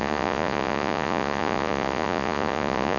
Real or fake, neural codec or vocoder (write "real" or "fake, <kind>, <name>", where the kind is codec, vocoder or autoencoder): fake, vocoder, Vocos